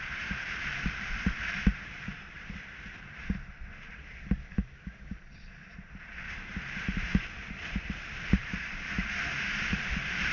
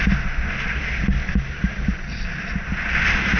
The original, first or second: second